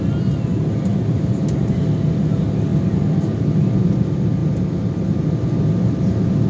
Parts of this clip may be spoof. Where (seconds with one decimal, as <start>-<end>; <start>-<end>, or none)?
none